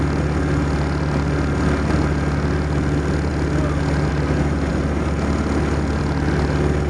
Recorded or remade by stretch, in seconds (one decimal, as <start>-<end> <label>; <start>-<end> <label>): 0.0-6.9 recorded